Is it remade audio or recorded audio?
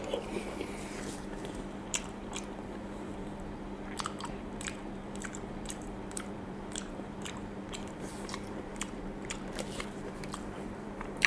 remade